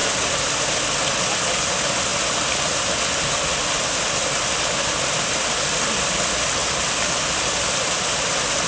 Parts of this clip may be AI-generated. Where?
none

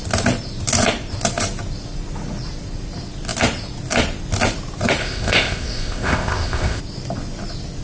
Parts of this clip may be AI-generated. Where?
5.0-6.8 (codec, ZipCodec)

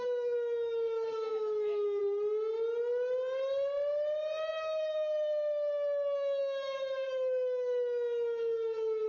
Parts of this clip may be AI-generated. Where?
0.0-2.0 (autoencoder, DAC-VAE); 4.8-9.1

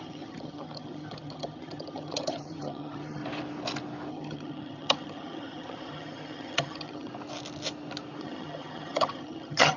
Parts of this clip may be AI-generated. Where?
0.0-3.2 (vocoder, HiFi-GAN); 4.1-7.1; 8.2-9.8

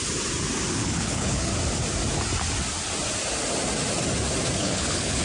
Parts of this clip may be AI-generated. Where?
0.7-1.5 (codec, HILCodec); 4.6-5.2

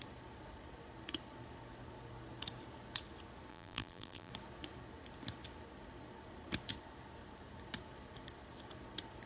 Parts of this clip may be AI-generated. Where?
3.5-4.3 (vocoder, BigVGAN v2)